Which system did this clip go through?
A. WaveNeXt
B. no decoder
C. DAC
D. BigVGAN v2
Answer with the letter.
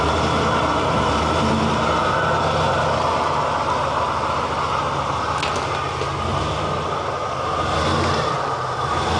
B